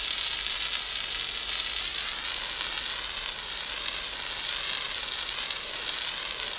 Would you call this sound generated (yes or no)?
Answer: no